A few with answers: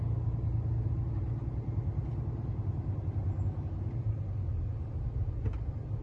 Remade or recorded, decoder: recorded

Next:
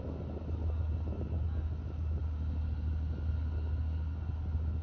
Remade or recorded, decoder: recorded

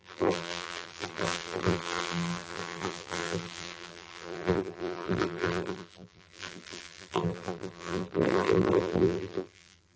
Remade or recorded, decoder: remade, vocoder, BigVGAN v2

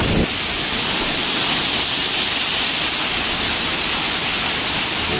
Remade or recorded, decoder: recorded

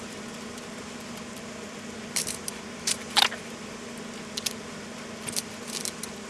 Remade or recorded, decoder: remade, vocoder, BigVGAN v2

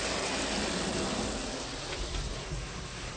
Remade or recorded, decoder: recorded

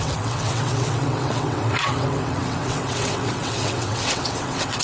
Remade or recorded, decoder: remade, vocoder, WaveNeXt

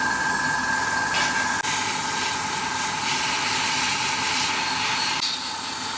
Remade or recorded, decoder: recorded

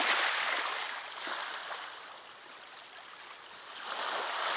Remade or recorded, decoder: recorded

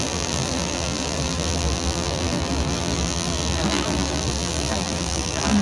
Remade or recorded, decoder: remade, vocoder, BigVGAN v2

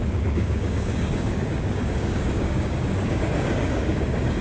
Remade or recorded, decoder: remade, codec, DAC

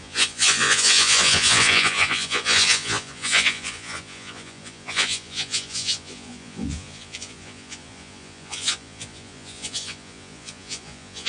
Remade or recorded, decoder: remade, vocoder, Vocos